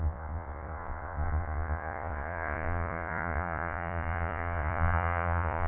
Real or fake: fake